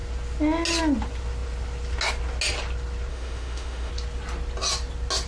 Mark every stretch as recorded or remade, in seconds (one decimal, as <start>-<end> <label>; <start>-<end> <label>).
0.0-3.1 recorded; 3.1-3.9 remade; 3.9-5.3 recorded